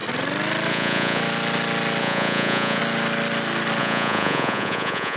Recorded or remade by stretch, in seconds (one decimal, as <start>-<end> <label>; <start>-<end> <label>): 0.0-0.7 recorded; 0.7-1.2 remade; 1.2-2.0 recorded; 2.0-2.8 remade; 2.8-3.8 recorded; 3.8-5.2 remade